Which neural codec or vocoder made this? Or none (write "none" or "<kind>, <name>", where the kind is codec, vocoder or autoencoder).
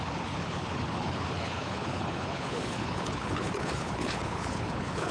codec, HILCodec